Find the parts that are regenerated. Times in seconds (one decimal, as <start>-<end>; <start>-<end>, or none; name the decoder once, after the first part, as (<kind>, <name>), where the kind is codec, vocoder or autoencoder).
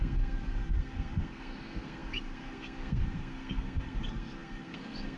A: 0.0-5.2 (codec, SNAC)